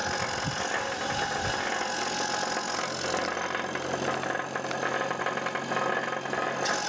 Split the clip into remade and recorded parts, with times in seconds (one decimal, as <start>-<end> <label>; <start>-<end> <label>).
0.0-6.9 recorded